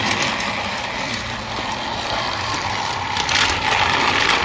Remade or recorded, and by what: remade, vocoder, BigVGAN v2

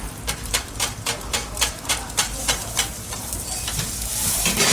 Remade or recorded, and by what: remade, vocoder, BigVGAN v2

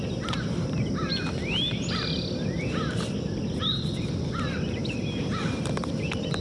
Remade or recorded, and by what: remade, vocoder, BigVGAN v2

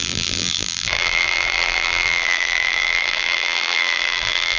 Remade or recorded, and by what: remade, vocoder, BigVGAN v2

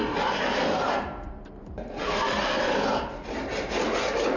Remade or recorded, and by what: remade, vocoder, BigVGAN v2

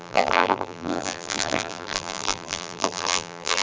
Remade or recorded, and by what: remade, vocoder, BigVGAN v2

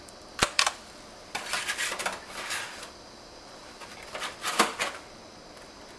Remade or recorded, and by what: remade, vocoder, BigVGAN v2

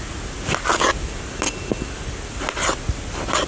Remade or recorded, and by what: recorded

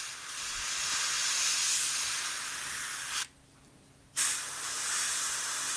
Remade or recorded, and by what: recorded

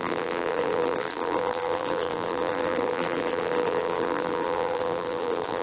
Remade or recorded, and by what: remade, vocoder, BigVGAN v2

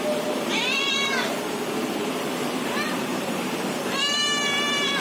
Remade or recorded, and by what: remade, vocoder, BigVGAN v2